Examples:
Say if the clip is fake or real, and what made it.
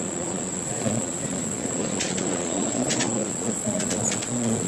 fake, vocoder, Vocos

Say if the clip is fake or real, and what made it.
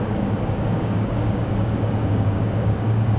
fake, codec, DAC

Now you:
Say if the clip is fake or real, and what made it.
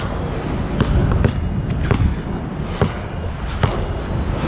real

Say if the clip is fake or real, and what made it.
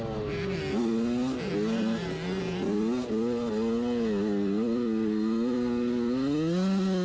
real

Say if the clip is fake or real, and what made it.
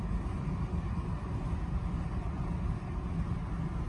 real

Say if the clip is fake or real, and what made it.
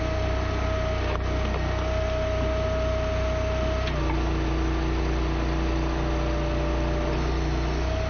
real